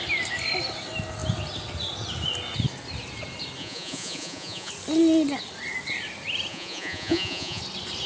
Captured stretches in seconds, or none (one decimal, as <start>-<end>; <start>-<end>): 0.0-3.6; 4.7-6.5; 7.6-8.1

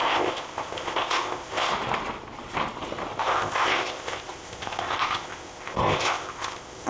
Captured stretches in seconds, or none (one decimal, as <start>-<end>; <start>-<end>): 1.7-3.2

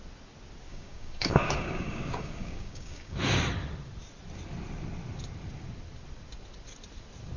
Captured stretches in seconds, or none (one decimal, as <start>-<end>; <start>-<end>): 0.0-0.7; 3.2-7.4

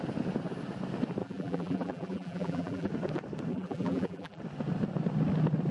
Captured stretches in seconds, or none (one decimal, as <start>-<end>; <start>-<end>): 0.0-1.2; 2.9-3.5; 4.4-5.7

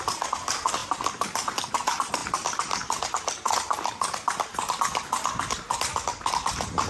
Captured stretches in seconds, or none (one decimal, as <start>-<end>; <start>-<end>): 0.0-6.9

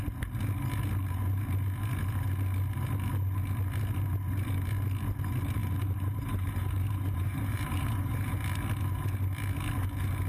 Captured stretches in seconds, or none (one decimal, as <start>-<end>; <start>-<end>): 0.0-5.6; 8.3-10.3